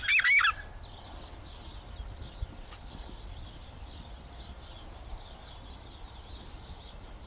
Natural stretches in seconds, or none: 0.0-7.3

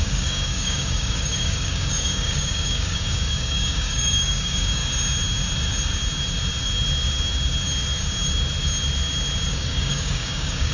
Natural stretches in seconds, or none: 4.8-9.5

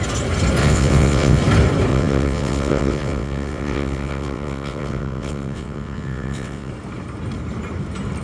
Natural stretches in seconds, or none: 0.0-0.6; 1.4-1.9; 6.7-8.2

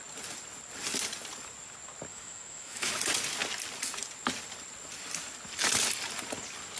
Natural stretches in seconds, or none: 0.0-2.1; 2.9-6.8

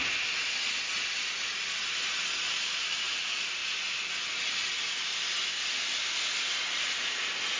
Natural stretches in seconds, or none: 0.0-7.6

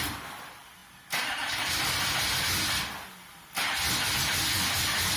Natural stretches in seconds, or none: 0.0-5.2